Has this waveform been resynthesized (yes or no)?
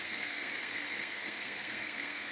yes